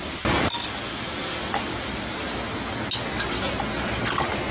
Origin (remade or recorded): recorded